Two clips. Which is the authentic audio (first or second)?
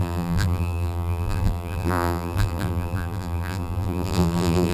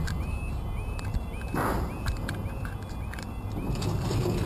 second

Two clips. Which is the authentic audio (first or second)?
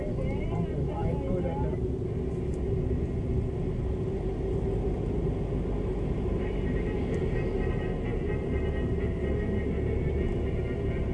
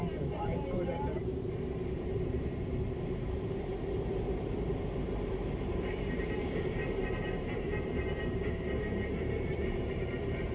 first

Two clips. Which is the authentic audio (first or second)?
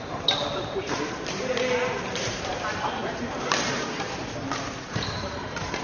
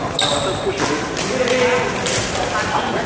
second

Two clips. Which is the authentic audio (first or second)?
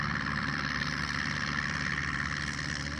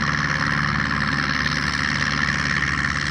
second